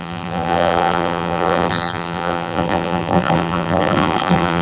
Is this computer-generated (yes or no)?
yes